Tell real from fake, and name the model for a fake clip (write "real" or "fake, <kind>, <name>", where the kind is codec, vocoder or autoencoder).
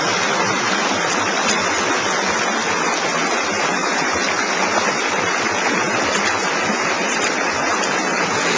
real